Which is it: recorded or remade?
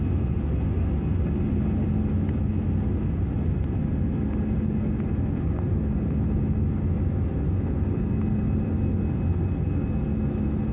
recorded